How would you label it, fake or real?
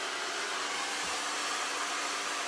real